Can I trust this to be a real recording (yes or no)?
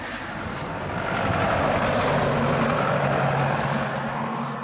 yes